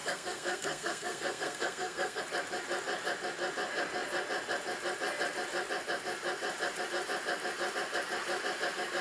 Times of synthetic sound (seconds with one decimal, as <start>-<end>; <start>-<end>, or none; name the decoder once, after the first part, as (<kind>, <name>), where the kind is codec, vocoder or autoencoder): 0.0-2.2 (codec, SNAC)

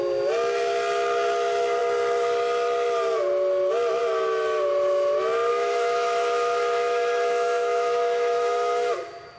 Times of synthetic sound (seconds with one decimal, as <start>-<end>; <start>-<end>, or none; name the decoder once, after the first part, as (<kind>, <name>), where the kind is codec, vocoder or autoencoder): 5.5-8.9 (autoencoder, DAC-VAE)

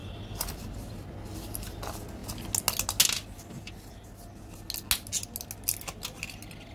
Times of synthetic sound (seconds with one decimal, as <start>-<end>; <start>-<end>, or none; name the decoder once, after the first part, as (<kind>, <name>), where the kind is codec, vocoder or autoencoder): none